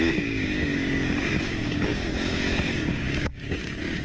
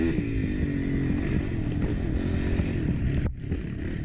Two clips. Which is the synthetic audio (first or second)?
first